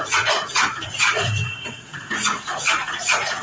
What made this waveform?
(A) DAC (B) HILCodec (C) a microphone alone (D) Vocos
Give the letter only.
D